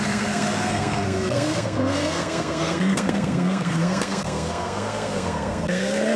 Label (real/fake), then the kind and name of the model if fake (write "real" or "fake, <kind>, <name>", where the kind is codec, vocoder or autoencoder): fake, codec, SNAC